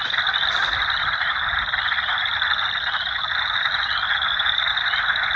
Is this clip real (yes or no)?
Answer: yes